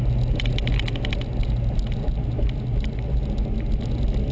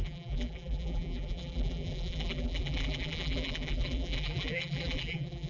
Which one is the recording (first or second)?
first